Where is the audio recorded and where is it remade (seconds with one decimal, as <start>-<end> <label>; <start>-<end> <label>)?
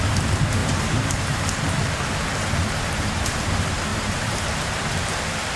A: 0.0-0.6 recorded; 0.6-1.6 remade; 1.6-2.6 recorded; 2.6-3.5 remade; 3.5-3.9 recorded; 3.9-4.7 remade; 4.7-5.6 recorded